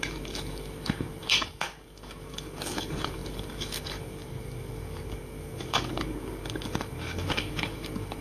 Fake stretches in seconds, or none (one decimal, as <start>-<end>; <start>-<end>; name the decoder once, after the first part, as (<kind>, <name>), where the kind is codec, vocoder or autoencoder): 0.0-8.2 (codec, DAC)